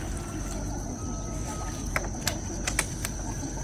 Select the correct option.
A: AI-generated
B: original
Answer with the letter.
B